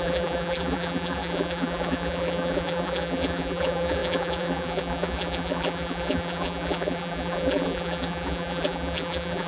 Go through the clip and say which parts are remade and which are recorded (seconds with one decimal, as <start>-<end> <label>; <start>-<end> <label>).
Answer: 0.0-9.5 remade